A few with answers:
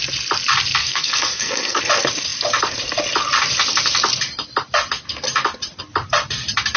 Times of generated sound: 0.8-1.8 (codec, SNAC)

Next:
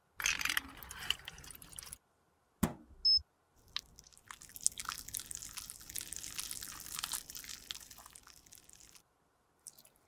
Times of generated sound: none

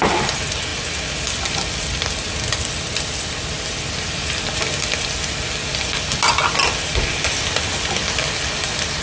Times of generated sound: none

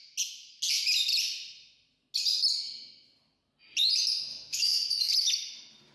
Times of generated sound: 4.3-5.1 (autoencoder, DAC-VAE)

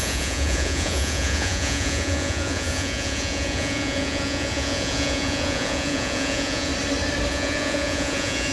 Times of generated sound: 0.0-6.7 (vocoder, Vocos); 7.3-8.5